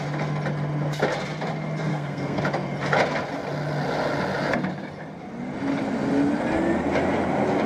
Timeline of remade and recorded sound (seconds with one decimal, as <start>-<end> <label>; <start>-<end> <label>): 0.0-1.9 recorded; 1.9-2.4 remade; 2.4-7.7 recorded